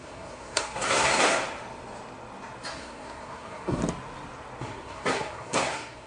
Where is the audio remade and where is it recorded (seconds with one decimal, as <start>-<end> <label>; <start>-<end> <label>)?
0.0-1.4 remade; 1.4-2.7 recorded; 2.7-3.8 remade; 3.8-4.6 recorded; 4.6-6.1 remade